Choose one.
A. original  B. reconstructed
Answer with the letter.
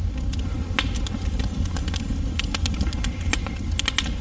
A